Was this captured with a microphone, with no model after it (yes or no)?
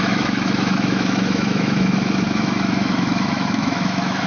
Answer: no